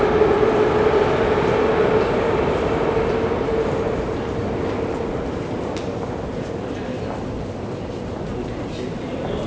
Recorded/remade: recorded